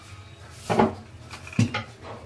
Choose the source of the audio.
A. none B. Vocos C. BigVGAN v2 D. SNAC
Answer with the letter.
A